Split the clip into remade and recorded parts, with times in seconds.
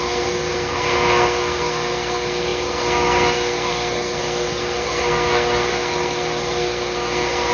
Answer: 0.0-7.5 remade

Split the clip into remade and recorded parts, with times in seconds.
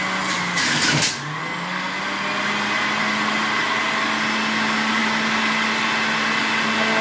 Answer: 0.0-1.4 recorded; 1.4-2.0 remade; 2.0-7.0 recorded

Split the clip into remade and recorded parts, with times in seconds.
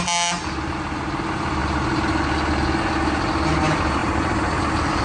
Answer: 0.0-4.0 recorded; 4.0-4.6 remade; 4.6-5.0 recorded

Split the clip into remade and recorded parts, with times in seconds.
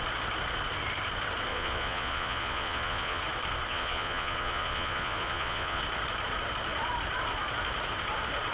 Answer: 0.0-1.5 recorded; 1.5-3.2 remade; 3.2-3.7 recorded; 3.7-5.8 remade; 5.8-8.5 recorded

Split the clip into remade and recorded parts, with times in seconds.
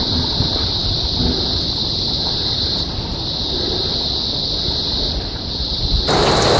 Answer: 0.0-6.6 recorded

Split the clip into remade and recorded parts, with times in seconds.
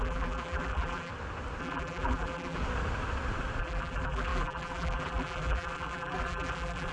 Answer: 0.0-1.1 remade; 1.1-1.6 recorded; 1.6-2.6 remade; 2.6-3.6 recorded; 3.6-6.9 remade